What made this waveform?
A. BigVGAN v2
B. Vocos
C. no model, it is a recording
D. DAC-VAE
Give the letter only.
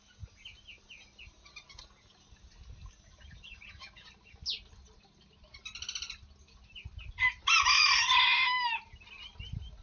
C